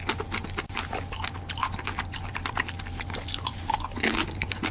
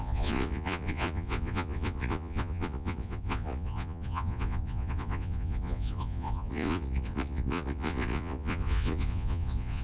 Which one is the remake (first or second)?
second